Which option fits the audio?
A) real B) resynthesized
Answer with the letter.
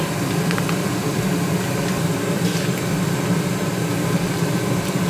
B